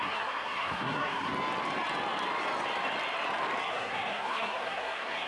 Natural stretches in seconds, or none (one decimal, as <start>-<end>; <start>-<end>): 1.3-3.7